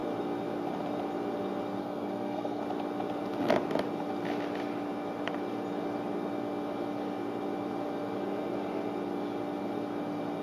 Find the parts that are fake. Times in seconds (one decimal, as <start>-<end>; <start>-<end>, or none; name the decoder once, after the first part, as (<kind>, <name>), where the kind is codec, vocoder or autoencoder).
1.8-2.6 (codec, SNAC)